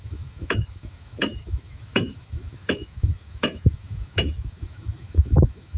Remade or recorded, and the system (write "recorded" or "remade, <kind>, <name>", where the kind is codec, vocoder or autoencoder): remade, autoencoder, DAC-VAE